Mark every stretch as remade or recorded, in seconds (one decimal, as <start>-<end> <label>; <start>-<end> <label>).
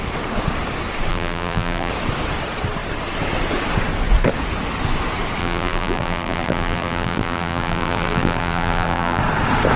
0.0-1.1 recorded; 1.1-1.9 remade; 1.9-5.4 recorded; 5.4-9.2 remade; 9.2-9.8 recorded